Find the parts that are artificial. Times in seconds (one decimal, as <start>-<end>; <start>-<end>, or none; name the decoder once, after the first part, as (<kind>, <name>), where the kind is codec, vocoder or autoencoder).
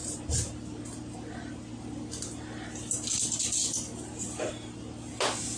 none